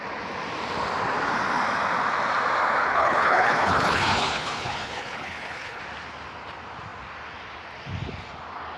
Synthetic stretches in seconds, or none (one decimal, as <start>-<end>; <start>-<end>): 2.8-5.8